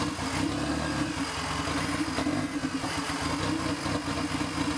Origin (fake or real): real